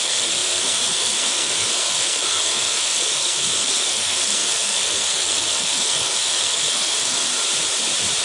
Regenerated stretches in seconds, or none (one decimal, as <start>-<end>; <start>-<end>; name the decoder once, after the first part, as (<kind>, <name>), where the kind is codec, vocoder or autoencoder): 0.0-7.3 (codec, SNAC)